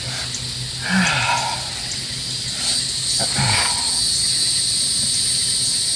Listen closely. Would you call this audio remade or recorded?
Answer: recorded